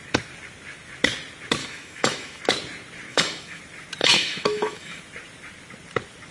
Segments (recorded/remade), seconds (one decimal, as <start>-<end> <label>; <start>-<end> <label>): 0.0-1.6 recorded; 1.6-2.4 remade; 2.4-3.1 recorded; 3.1-3.6 remade; 3.6-4.0 recorded; 4.0-5.0 remade; 5.0-6.3 recorded